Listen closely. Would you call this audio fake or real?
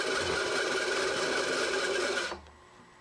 real